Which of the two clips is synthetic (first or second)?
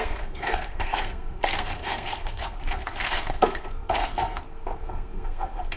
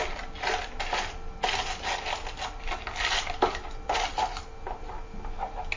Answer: first